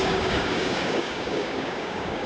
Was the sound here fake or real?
fake